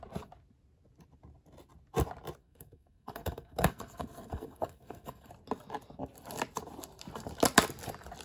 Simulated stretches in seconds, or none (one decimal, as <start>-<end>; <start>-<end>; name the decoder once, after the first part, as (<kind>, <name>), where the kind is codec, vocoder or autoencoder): 2.4-5.3 (codec, SNAC)